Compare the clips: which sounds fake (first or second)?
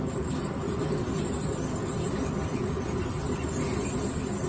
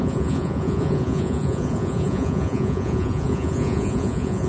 second